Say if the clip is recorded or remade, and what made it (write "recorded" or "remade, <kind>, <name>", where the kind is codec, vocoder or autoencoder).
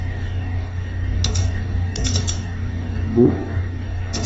remade, codec, DAC